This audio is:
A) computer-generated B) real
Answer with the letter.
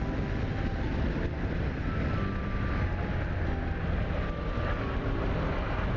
B